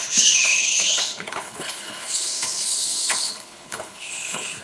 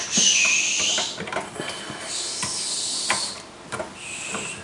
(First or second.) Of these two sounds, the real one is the second